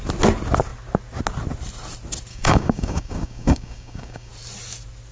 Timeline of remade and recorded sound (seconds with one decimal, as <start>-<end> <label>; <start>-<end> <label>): 0.0-2.3 recorded; 2.3-4.3 remade; 4.3-5.1 recorded